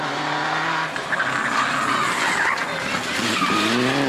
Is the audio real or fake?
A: real